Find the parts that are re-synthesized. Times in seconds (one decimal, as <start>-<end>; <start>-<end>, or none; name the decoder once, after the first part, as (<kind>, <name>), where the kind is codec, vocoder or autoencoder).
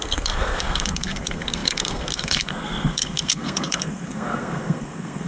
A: 0.0-5.3 (codec, SNAC)